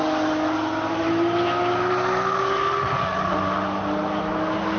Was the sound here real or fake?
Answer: real